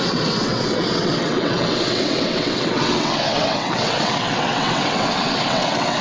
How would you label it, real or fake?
fake